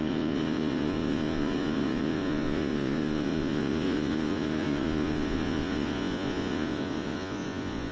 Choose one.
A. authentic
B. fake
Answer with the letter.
B